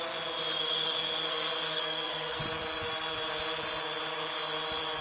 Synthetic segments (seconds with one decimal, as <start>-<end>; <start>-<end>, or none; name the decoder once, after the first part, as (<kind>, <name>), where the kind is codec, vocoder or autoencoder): 0.6-2.4 (codec, SNAC)